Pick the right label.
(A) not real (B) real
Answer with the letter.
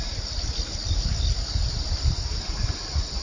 B